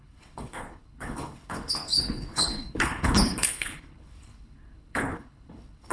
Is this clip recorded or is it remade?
remade